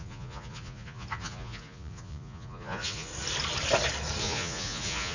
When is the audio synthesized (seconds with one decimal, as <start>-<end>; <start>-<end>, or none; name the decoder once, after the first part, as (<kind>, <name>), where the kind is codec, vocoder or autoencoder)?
0.0-3.1 (vocoder, Vocos); 4.2-5.1